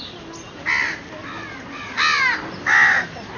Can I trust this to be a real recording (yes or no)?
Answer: yes